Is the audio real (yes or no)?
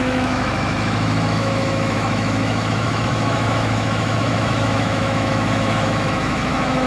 no